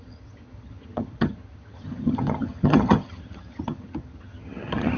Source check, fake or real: fake